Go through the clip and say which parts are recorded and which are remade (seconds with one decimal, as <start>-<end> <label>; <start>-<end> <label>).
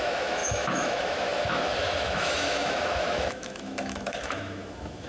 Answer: 0.0-5.1 remade